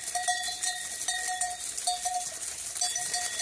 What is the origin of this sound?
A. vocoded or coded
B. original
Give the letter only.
B